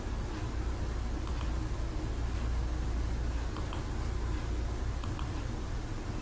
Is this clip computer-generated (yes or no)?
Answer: no